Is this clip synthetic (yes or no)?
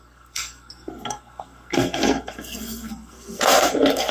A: yes